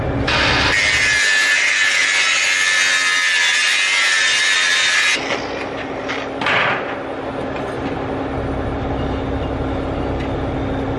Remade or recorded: recorded